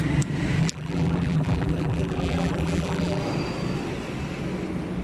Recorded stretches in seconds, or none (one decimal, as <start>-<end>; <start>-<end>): 0.0-0.6; 3.2-5.0